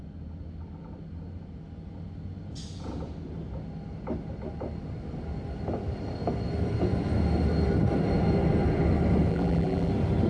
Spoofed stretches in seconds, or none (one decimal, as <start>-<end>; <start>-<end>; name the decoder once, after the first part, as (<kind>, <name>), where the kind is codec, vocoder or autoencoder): 9.3-9.9 (vocoder, BigVGAN v2)